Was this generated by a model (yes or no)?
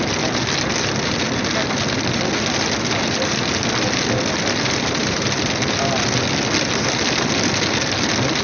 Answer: no